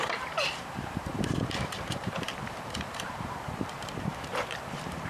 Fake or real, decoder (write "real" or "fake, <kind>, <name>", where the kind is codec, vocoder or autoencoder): fake, vocoder, BigVGAN v2